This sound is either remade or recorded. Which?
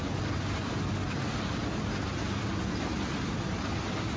recorded